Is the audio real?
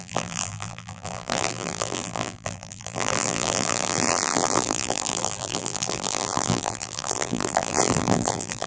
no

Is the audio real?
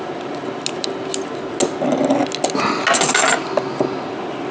yes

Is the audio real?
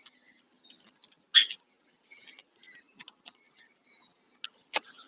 yes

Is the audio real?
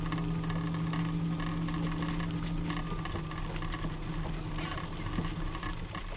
yes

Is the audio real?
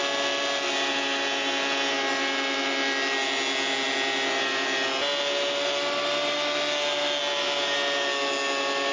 yes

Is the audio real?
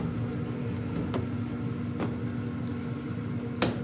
yes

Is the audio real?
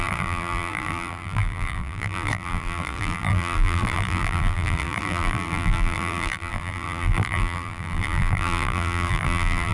no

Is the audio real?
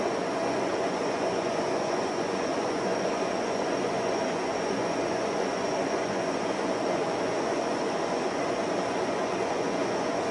no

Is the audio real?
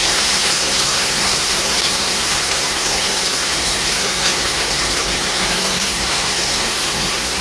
no